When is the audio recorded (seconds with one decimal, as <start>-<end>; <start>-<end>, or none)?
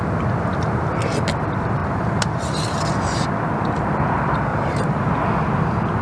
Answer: 0.0-1.8; 2.5-4.5; 5.1-6.0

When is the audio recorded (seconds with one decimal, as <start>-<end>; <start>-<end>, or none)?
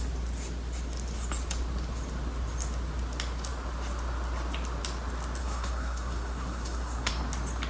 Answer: 0.0-5.4; 7.1-7.7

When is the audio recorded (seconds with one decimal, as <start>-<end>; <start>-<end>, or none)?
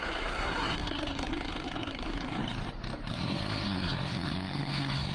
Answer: 2.4-3.1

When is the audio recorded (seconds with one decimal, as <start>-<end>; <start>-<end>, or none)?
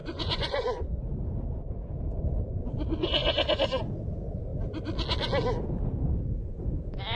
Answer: 0.9-7.2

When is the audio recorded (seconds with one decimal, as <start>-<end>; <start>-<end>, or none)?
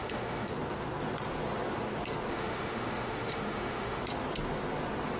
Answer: 0.5-2.3; 4.0-5.2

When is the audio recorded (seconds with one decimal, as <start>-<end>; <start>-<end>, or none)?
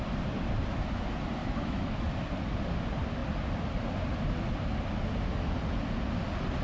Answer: 0.0-1.4; 2.1-6.6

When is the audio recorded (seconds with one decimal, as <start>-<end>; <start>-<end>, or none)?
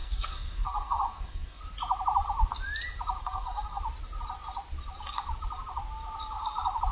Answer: 1.6-3.2; 3.8-6.9